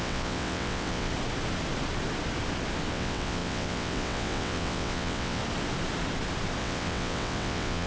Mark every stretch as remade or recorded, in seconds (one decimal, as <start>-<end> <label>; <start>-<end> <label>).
0.0-1.1 remade; 1.1-2.9 recorded; 2.9-5.4 remade; 5.4-6.6 recorded; 6.6-7.9 remade